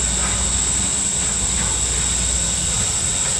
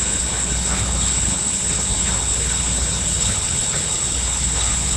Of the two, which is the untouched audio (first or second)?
first